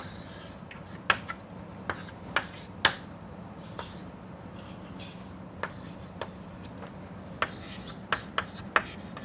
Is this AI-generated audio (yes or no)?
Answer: no